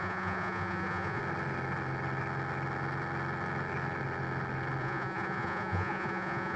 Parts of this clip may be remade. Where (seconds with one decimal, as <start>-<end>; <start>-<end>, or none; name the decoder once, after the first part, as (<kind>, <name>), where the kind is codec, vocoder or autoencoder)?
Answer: 0.0-1.2 (vocoder, Vocos); 4.8-6.6

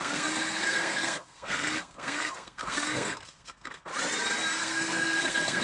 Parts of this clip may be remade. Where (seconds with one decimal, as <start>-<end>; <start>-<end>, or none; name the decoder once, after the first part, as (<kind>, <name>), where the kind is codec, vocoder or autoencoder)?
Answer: 0.0-3.9 (codec, SNAC); 4.6-5.6